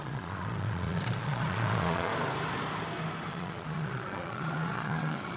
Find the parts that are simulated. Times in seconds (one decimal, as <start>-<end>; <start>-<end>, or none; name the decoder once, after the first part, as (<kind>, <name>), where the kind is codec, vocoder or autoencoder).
0.0-2.1 (vocoder, Vocos); 3.3-5.4